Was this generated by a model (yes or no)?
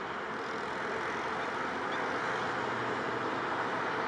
no